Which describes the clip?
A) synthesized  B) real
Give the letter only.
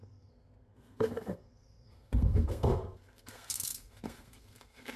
A